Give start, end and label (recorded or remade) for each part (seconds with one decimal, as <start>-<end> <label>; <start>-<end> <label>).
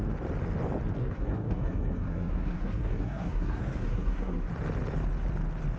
0.0-1.0 recorded; 1.0-4.5 remade; 4.5-5.8 recorded